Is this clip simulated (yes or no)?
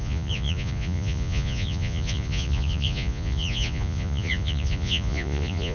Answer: yes